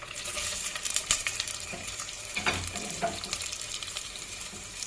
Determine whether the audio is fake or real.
fake